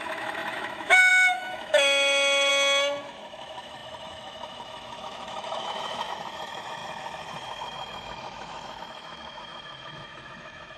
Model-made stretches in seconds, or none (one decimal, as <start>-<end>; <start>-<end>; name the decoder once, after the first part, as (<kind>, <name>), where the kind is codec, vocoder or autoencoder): 0.0-2.5 (autoencoder, DAC-VAE); 3.0-10.8